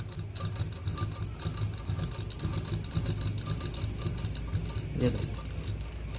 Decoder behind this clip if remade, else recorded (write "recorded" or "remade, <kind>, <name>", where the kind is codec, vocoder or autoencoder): recorded